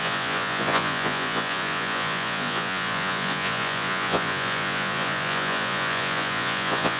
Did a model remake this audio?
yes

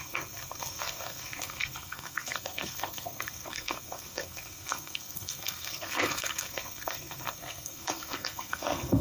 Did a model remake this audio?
yes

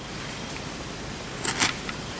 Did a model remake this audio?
no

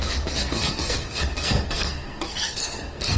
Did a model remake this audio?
yes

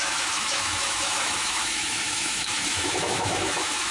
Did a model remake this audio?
yes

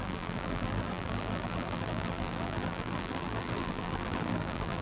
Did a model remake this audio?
yes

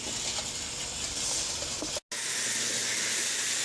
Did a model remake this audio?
no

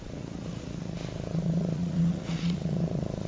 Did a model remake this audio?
yes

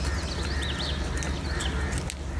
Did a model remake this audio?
no